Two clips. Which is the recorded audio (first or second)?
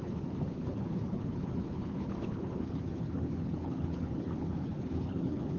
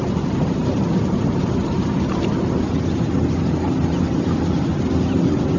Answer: second